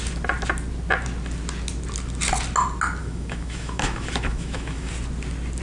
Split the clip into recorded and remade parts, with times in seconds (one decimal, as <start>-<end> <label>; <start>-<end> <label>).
0.0-3.0 recorded; 3.0-4.9 remade; 4.9-5.6 recorded